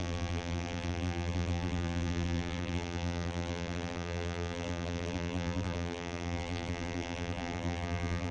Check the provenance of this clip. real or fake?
fake